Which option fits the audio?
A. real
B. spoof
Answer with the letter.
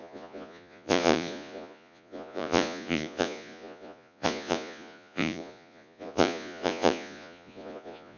B